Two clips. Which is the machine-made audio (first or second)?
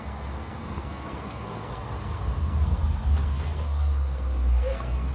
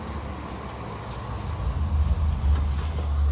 first